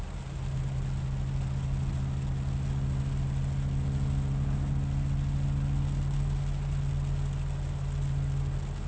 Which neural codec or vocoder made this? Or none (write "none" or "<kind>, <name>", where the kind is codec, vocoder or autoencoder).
none